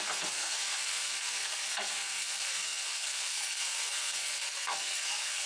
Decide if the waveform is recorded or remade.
remade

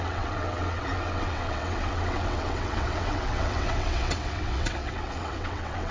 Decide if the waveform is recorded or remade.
remade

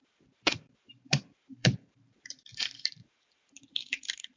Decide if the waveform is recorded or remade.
remade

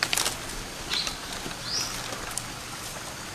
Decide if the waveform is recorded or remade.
recorded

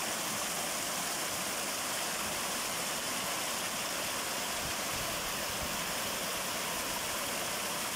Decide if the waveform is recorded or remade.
recorded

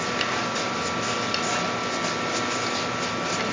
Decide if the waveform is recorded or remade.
recorded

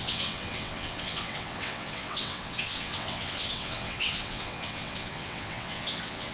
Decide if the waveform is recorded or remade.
remade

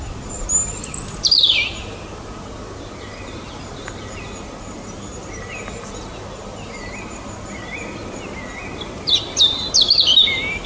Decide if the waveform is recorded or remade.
recorded